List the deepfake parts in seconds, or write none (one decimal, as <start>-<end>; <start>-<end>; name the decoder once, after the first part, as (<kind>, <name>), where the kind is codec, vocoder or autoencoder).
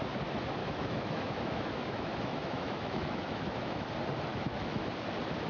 0.6-3.9 (autoencoder, DAC-VAE); 4.3-4.9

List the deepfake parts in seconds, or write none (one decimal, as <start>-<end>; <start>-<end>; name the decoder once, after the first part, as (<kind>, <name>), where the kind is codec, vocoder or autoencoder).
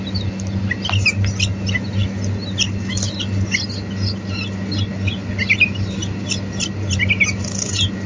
none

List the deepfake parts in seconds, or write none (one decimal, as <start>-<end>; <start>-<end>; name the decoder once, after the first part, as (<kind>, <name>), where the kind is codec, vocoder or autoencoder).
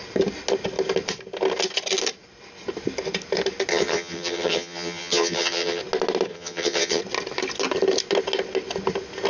3.7-5.8 (vocoder, HiFi-GAN); 6.3-7.0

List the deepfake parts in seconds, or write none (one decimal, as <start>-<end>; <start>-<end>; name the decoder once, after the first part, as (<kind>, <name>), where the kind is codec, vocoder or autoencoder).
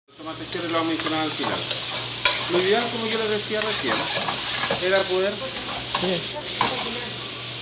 none